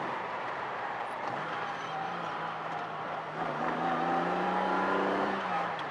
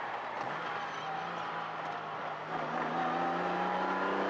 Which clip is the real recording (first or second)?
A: second